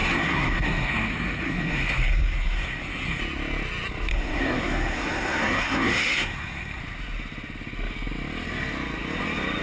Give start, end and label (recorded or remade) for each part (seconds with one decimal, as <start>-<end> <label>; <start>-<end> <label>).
0.0-3.2 remade; 3.2-4.1 recorded; 4.1-6.8 remade; 6.8-9.6 recorded